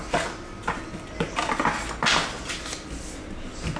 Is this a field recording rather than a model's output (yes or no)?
yes